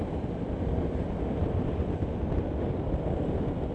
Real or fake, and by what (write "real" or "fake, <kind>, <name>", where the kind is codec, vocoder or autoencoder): real